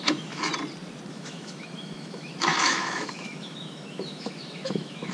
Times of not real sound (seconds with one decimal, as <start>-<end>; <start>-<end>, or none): 0.0-0.5; 1.1-5.1